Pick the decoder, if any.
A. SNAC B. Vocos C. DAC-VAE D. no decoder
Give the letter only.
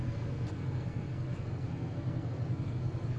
A